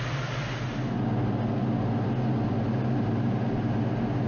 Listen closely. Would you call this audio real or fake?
real